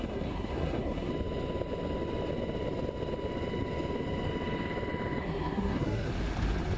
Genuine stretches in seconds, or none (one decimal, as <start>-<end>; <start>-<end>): 1.1-5.2; 6.1-6.8